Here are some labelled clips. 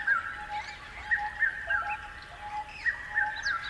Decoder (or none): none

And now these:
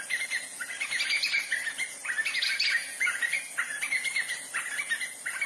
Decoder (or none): none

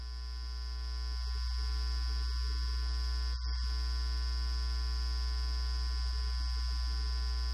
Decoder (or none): none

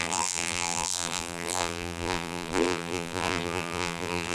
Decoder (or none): vocoder, BigVGAN v2